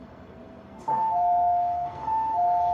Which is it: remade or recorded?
remade